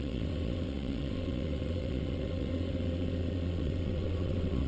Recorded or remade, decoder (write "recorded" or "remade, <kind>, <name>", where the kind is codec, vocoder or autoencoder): remade, vocoder, WaveNeXt